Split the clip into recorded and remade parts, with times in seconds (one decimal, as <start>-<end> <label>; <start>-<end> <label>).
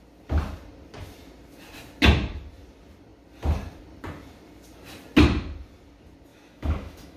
0.0-6.3 recorded; 6.3-7.2 remade